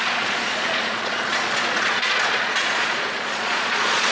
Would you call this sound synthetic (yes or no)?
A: yes